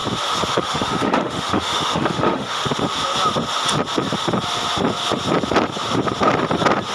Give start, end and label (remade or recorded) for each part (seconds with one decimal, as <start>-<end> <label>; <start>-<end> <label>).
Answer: 0.0-0.5 recorded; 0.5-2.6 remade; 2.6-6.9 recorded